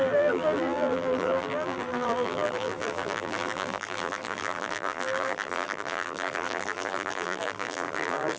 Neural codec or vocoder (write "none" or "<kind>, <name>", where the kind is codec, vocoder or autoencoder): vocoder, BigVGAN v2